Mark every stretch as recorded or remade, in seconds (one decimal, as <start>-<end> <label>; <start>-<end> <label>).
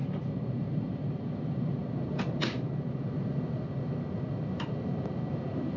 0.0-1.8 remade; 1.8-5.3 recorded; 5.3-5.8 remade